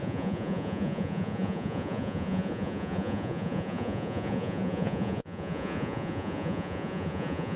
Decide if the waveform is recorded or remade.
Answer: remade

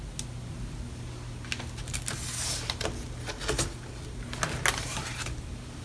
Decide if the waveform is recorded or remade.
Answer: recorded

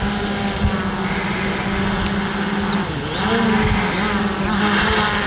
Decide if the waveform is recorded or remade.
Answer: recorded